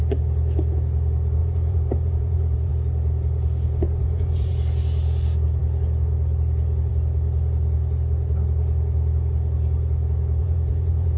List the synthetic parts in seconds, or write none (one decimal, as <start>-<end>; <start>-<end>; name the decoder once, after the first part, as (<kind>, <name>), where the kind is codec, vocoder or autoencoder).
1.4-2.7 (vocoder, Vocos); 4.0-4.5; 10.4-11.2